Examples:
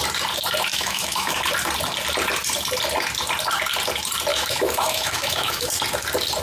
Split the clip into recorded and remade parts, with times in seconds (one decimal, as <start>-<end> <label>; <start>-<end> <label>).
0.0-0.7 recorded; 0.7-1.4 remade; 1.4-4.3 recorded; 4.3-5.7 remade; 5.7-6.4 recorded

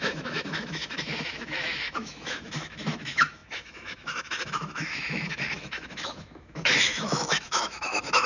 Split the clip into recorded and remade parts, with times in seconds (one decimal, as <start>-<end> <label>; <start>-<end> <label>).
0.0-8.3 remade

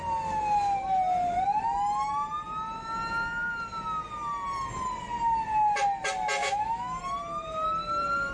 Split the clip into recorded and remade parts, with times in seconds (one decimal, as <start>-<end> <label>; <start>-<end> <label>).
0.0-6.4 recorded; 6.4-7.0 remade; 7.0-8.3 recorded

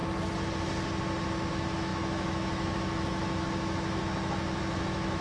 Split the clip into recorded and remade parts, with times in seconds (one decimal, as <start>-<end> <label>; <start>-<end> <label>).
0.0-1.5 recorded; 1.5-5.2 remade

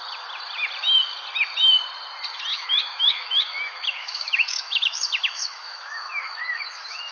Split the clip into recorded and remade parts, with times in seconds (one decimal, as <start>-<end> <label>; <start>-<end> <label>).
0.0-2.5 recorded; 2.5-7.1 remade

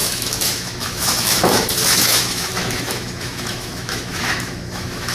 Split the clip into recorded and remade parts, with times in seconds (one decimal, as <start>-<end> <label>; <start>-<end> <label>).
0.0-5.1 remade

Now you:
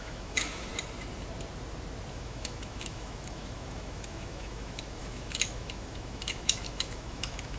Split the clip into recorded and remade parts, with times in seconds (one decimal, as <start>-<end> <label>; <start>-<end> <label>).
0.0-0.7 remade; 0.7-2.1 recorded; 2.1-7.6 remade